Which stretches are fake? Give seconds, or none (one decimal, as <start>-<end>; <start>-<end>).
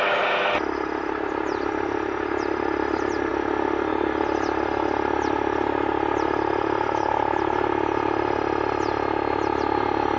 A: none